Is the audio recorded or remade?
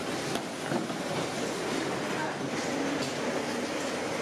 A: recorded